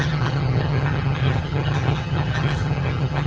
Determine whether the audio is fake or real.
fake